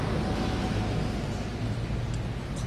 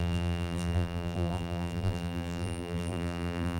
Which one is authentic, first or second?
first